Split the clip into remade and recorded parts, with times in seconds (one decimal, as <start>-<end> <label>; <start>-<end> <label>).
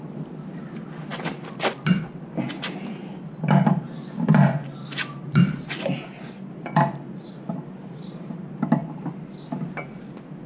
0.0-10.5 recorded